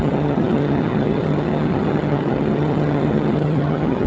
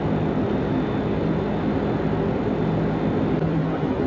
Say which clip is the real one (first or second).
second